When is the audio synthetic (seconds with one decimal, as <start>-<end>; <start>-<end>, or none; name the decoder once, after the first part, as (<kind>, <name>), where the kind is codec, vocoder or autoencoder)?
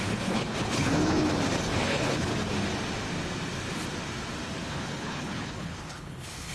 0.0-1.3 (codec, HILCodec); 1.8-2.3; 4.7-6.5